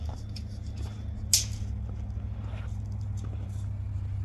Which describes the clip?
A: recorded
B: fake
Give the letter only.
A